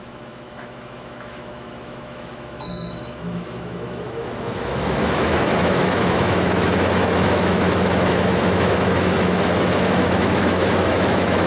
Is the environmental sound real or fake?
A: fake